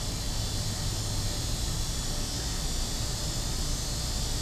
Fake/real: real